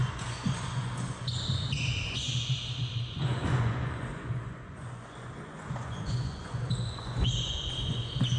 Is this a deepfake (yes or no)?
yes